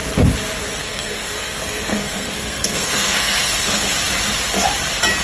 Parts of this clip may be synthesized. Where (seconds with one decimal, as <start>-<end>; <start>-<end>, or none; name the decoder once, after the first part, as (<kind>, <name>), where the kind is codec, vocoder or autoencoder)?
0.8-3.9 (codec, SNAC)